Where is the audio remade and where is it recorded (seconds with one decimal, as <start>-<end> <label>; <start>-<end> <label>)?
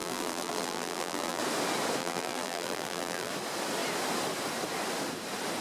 0.0-1.4 remade; 1.4-2.0 recorded; 2.0-3.3 remade; 3.3-5.6 recorded